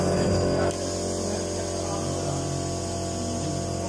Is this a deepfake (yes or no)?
no